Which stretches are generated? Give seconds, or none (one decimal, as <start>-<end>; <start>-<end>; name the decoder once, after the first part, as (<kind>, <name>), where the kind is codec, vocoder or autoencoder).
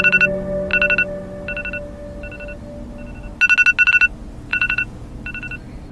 4.5-5.1 (vocoder, Vocos)